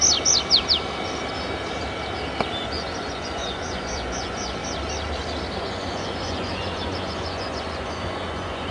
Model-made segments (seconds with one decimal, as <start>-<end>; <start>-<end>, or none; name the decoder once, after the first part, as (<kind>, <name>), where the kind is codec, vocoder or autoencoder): 2.6-4.6 (vocoder, Vocos); 5.6-8.7